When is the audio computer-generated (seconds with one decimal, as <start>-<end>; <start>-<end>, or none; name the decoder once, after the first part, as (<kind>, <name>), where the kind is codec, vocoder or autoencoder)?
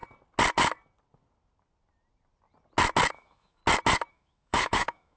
3.1-3.6 (autoencoder, DAC-VAE); 4.1-5.2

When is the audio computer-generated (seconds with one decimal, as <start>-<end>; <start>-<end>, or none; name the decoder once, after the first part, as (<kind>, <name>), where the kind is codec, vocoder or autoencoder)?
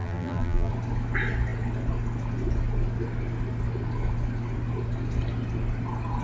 0.0-0.7 (vocoder, BigVGAN v2)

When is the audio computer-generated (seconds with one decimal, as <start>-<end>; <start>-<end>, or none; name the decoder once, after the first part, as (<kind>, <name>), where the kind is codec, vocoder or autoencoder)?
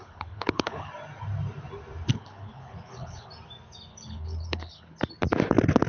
0.0-0.9 (codec, HILCodec); 2.1-3.3; 3.9-5.0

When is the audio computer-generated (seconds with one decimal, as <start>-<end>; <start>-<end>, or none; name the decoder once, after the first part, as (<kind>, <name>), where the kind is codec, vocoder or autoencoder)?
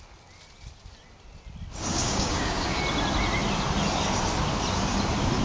1.9-2.8 (codec, DAC)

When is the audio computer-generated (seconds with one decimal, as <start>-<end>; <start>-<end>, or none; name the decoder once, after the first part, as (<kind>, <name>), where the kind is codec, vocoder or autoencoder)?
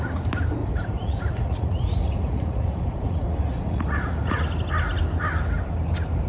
0.6-4.4 (vocoder, Vocos)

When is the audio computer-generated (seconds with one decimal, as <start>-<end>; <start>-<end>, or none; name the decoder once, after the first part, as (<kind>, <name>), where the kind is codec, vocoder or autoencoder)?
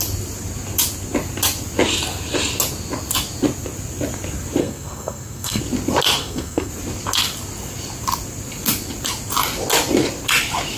4.6-5.6 (codec, SNAC); 6.2-6.7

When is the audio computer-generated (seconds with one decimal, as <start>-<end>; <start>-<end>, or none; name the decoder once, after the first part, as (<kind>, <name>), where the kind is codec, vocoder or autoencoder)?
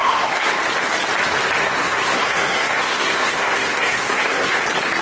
0.0-0.5 (codec, SNAC); 1.6-4.6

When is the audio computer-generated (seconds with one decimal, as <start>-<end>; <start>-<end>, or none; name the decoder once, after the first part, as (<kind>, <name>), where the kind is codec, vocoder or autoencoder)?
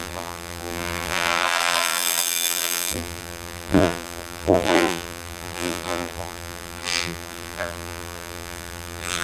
0.0-9.2 (vocoder, BigVGAN v2)